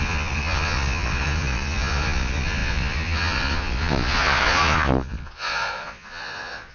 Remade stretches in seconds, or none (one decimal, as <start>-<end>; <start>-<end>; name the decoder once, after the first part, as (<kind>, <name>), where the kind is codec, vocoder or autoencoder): 0.0-6.7 (vocoder, Vocos)